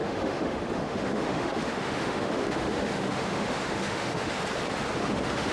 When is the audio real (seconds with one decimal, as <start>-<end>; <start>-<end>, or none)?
4.4-5.0